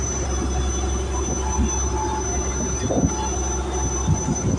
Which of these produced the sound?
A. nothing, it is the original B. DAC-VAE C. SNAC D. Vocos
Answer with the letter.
A